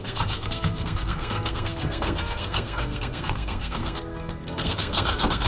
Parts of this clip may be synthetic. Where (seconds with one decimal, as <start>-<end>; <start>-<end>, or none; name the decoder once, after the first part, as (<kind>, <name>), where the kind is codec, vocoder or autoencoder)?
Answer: 0.0-5.5 (codec, SNAC)